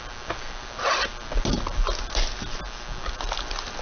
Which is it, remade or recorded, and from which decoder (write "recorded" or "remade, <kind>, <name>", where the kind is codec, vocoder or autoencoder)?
recorded